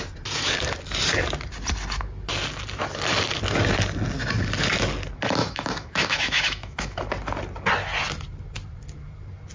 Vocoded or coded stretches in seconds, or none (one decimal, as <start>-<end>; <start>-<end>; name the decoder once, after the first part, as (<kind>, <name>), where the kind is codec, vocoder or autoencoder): 5.4-7.0 (autoencoder, DAC-VAE)